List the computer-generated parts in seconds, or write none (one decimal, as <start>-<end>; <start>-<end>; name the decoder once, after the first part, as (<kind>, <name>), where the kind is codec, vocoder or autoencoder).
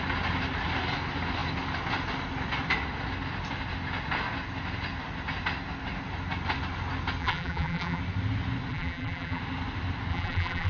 7.2-8.0 (vocoder, BigVGAN v2); 8.7-9.4; 10.1-10.7